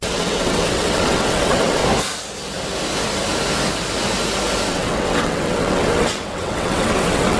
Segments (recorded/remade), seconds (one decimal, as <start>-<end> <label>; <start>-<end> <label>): 0.0-1.8 remade; 1.8-4.7 recorded; 4.7-7.4 remade